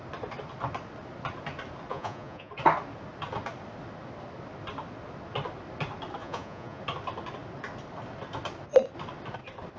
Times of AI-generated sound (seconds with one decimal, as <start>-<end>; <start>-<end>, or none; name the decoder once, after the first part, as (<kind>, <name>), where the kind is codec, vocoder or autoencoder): 1.9-2.5 (vocoder, Vocos); 6.2-6.8